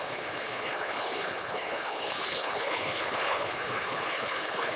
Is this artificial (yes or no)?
yes